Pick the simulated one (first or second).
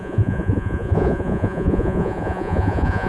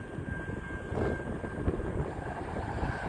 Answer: first